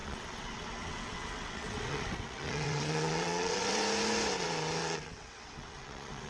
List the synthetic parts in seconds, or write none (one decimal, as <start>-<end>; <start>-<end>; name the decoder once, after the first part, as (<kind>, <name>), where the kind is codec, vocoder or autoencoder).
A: 0.0-3.8 (vocoder, WaveNeXt); 4.8-6.3